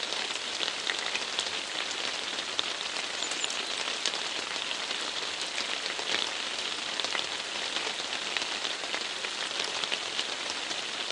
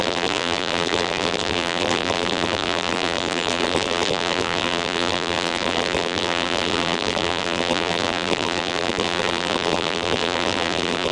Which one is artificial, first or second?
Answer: second